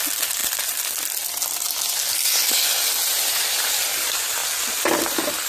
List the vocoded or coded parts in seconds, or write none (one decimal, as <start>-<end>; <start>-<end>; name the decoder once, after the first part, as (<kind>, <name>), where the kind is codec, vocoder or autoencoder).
none